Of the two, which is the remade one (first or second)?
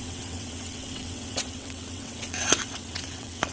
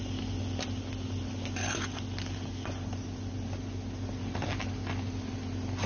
first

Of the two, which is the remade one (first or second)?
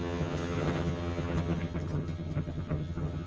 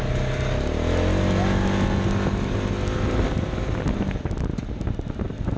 first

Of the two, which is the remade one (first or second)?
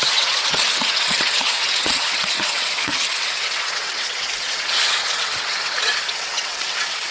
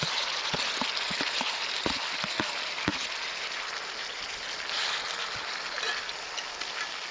first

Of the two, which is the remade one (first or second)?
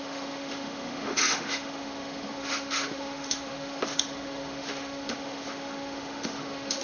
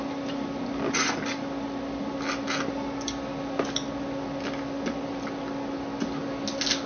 first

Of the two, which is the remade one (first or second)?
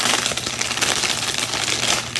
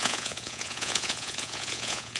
second